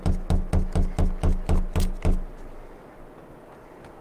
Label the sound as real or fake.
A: real